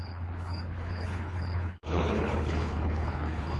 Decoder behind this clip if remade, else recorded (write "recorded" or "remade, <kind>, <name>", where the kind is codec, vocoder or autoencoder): remade, codec, HILCodec